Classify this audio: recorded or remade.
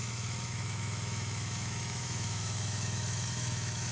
remade